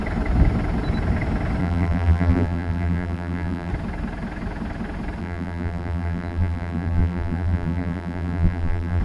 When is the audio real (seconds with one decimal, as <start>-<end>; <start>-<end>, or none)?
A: 0.0-1.6; 3.7-5.2

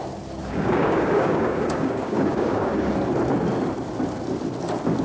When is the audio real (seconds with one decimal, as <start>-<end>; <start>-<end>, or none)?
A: 0.0-0.4; 2.9-5.0

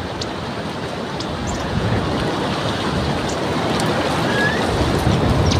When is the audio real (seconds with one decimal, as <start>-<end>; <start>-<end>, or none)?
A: 0.0-1.4; 2.0-5.6

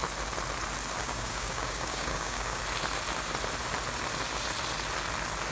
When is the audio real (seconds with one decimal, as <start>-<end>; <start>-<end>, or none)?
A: 0.0-1.0; 2.6-5.5

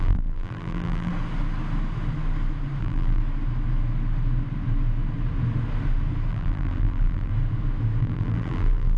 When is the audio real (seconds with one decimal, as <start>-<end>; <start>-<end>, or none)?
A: 1.1-2.8; 3.2-6.3; 7.3-8.0

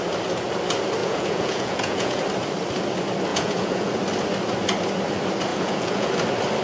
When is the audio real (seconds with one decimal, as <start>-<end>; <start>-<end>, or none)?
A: 0.0-1.0; 2.2-3.3; 3.9-5.5; 6.1-6.6

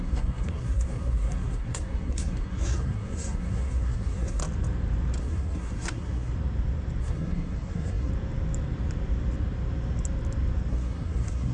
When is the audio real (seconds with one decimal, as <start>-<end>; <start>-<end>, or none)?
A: 4.4-5.2; 6.3-7.0; 8.1-10.7